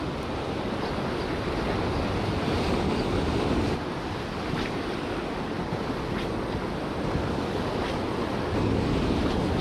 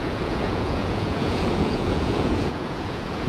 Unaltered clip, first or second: first